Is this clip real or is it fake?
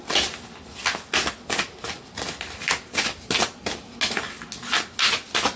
real